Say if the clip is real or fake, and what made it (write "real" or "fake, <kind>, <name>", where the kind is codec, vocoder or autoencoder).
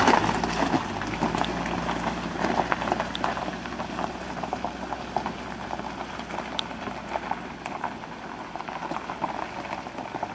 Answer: real